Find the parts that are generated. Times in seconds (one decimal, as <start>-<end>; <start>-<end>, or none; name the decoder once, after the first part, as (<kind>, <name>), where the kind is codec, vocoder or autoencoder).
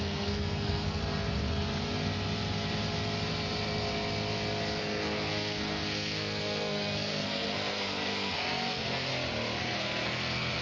0.0-1.0 (codec, SNAC); 4.8-9.1; 9.6-10.6